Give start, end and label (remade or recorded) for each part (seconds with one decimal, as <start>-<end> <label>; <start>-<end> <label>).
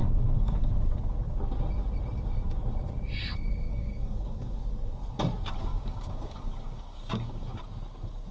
0.0-0.7 remade; 0.7-3.7 recorded; 3.7-4.6 remade; 4.6-5.7 recorded; 5.7-7.6 remade; 7.6-8.3 recorded